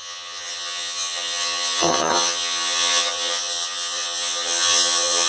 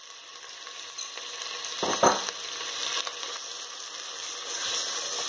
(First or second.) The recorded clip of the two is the second